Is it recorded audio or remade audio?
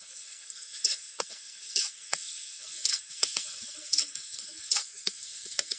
remade